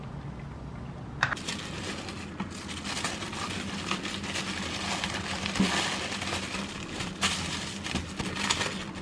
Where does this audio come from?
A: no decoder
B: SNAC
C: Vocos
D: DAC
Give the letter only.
A